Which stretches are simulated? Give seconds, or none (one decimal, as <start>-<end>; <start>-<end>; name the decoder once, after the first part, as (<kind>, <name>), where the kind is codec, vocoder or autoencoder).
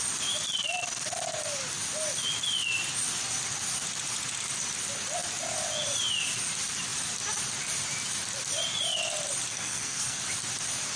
9.5-10.2 (codec, SNAC)